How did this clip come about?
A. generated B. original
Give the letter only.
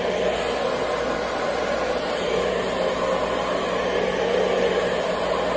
B